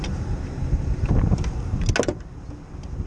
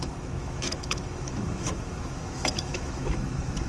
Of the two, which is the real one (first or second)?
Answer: first